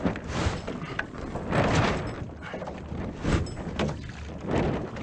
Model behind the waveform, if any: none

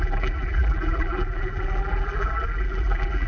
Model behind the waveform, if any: vocoder, BigVGAN v2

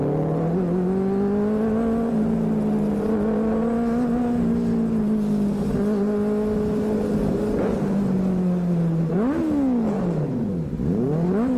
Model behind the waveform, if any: none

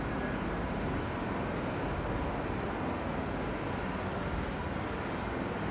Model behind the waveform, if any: none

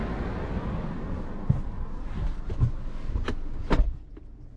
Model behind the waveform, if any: none